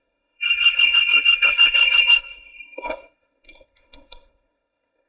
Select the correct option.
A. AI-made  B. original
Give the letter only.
A